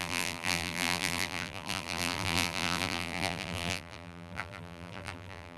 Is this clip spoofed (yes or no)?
yes